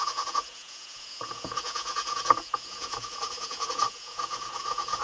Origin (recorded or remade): remade